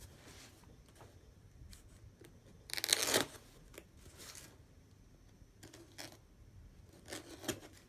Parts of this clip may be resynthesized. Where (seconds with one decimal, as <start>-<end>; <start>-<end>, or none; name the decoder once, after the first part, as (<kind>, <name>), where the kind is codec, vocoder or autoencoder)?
none